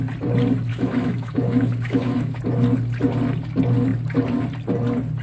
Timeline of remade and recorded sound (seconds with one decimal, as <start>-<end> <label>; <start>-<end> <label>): 0.0-0.7 recorded; 0.7-2.4 remade; 2.4-5.2 recorded